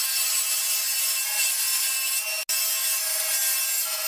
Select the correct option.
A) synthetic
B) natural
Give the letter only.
B